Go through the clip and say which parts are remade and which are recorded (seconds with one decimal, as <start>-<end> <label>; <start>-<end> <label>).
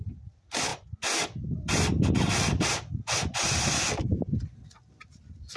0.0-5.6 recorded